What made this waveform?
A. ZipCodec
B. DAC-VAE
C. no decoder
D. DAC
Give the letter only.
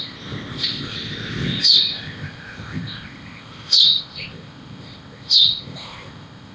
A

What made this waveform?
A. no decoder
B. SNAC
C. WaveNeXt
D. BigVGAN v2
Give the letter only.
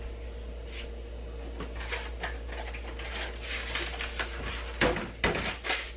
A